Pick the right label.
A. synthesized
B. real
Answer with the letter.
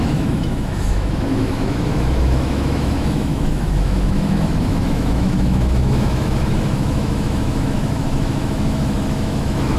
A